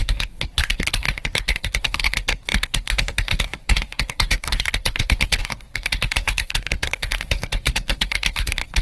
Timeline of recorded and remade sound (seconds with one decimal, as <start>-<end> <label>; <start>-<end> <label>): 0.0-8.8 remade